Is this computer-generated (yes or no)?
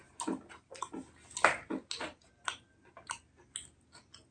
no